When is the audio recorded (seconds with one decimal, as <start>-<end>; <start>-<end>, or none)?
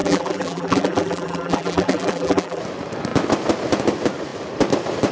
2.6-5.1